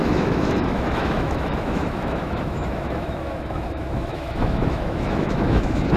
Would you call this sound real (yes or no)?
no